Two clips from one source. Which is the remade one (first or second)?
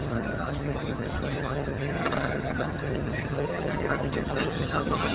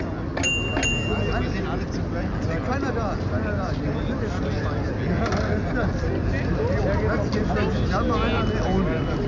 first